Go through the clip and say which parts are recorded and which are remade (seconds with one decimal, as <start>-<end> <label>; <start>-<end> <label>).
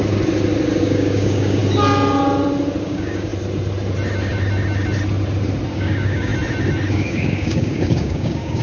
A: 0.0-0.8 recorded; 0.8-1.6 remade; 1.6-2.8 recorded; 2.8-3.3 remade; 3.3-5.7 recorded; 5.7-6.3 remade; 6.3-6.9 recorded; 6.9-8.6 remade